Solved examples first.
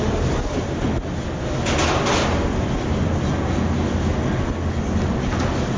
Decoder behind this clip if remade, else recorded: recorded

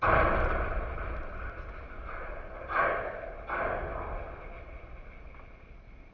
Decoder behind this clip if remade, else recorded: recorded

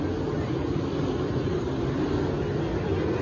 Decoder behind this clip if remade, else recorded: recorded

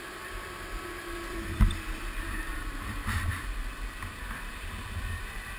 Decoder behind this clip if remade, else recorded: remade, vocoder, BigVGAN v2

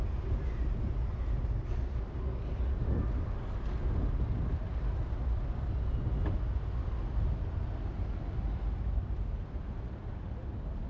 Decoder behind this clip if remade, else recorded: recorded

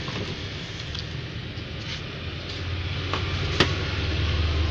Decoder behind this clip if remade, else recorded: recorded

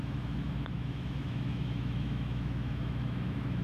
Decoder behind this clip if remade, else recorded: remade, autoencoder, DAC-VAE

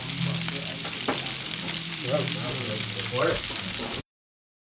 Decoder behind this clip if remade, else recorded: recorded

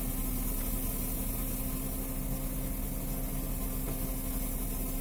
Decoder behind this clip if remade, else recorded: recorded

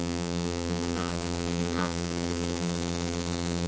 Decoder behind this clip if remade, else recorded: remade, vocoder, BigVGAN v2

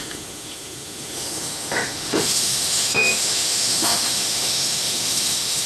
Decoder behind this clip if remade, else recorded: remade, autoencoder, DAC-VAE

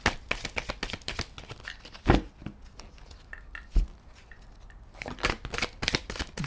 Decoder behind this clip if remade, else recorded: recorded